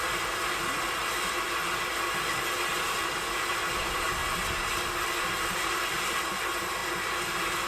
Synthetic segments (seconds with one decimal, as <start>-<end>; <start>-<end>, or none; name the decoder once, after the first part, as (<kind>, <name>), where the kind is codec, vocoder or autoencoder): 0.0-1.0 (vocoder, BigVGAN v2); 3.8-4.2; 6.0-6.8